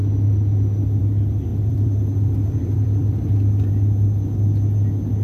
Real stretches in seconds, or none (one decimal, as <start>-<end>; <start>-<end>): 0.0-1.5; 3.7-5.2